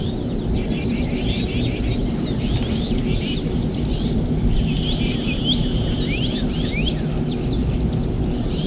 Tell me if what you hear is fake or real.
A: real